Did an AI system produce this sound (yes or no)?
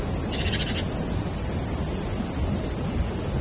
no